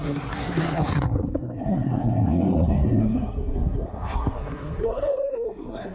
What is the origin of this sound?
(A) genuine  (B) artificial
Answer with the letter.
B